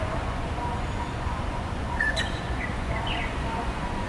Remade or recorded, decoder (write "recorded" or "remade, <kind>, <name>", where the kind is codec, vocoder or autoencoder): remade, vocoder, Vocos